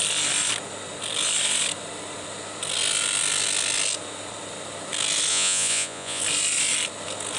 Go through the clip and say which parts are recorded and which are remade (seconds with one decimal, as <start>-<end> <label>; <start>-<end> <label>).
0.0-5.3 recorded; 5.3-6.2 remade; 6.2-7.4 recorded